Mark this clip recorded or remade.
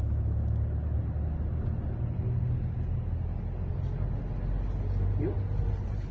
recorded